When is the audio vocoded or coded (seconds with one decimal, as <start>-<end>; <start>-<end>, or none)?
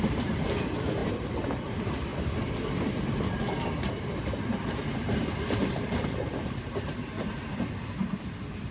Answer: none